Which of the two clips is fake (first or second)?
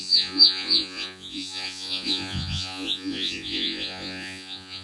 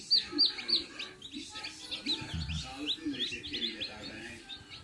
first